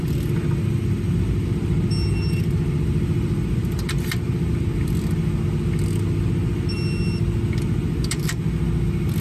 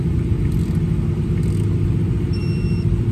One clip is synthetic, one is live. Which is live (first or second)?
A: first